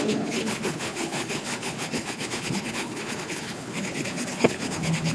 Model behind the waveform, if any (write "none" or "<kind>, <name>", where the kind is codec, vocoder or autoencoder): codec, HILCodec